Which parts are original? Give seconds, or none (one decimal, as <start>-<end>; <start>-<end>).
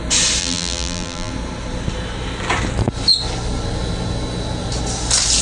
0.0-0.4; 1.3-5.4